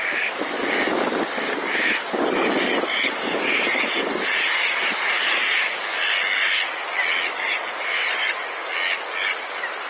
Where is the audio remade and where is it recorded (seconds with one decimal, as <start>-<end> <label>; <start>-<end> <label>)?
0.0-5.7 remade; 5.7-7.5 recorded; 7.5-8.4 remade; 8.4-9.3 recorded; 9.3-9.9 remade